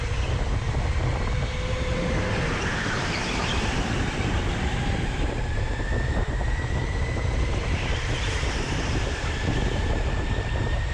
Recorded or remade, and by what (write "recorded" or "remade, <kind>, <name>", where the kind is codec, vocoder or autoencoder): remade, vocoder, BigVGAN v2